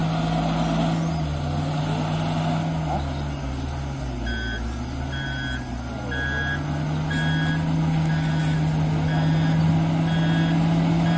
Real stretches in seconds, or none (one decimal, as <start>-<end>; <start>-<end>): 0.0-11.2